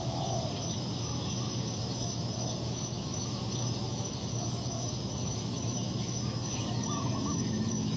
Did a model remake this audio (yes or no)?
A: yes